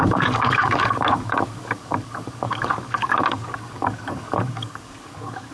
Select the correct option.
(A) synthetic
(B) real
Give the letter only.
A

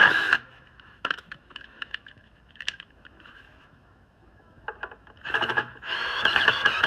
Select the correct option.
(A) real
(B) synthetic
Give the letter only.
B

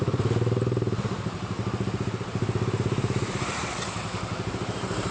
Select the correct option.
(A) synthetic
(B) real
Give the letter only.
A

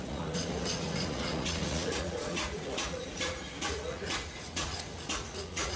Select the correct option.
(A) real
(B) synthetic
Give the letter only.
B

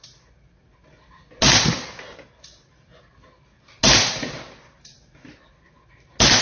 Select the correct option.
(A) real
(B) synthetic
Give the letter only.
A